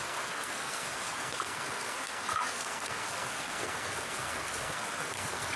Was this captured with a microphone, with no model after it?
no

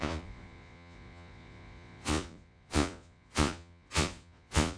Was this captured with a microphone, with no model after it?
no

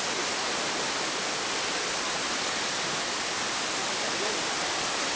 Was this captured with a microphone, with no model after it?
yes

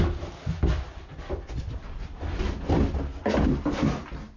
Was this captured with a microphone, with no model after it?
yes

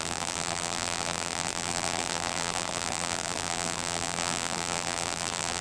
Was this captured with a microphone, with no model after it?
no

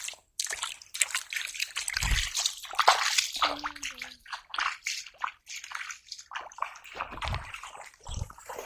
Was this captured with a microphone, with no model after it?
yes